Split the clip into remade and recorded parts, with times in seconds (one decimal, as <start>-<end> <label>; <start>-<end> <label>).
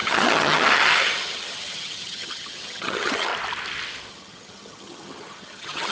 0.0-3.3 remade; 3.3-4.1 recorded; 4.1-5.9 remade